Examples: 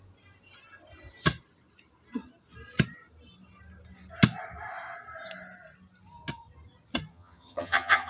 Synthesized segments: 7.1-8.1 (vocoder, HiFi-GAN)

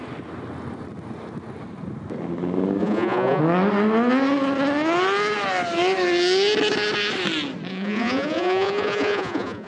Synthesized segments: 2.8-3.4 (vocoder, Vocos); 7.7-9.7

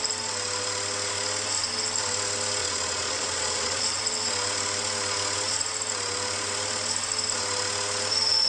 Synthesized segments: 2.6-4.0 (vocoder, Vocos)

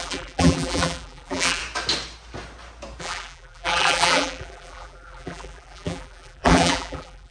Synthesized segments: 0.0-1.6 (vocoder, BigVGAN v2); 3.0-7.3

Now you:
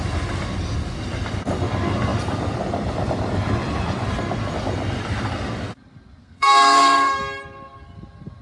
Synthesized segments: 6.2-7.2 (codec, SNAC)

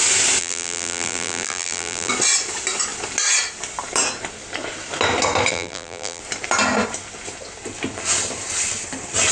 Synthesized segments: 0.4-2.1 (vocoder, BigVGAN v2); 5.5-6.2

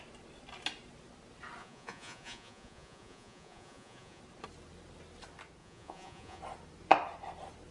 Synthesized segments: 1.6-4.2 (vocoder, Vocos); 5.6-6.4